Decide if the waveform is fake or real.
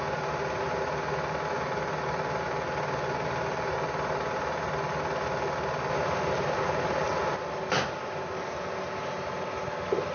real